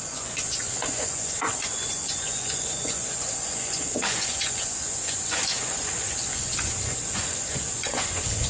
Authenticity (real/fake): fake